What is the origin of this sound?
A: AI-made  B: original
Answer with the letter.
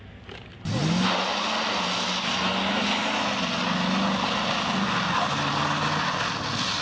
B